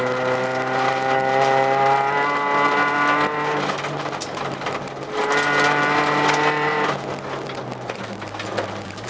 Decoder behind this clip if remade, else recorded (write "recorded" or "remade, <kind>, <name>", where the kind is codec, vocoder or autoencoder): recorded